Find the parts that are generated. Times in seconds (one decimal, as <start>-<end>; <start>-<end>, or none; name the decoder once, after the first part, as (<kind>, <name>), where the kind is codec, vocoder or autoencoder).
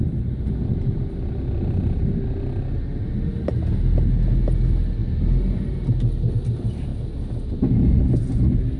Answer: none